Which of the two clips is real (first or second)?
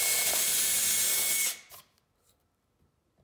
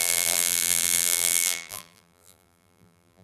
first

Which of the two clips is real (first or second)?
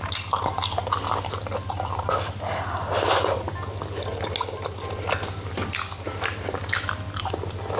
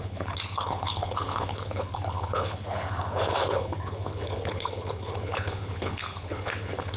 first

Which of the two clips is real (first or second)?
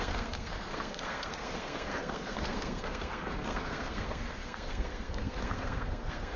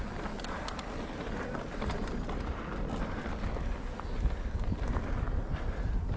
second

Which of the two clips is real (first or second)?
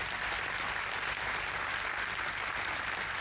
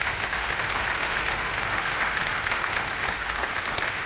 first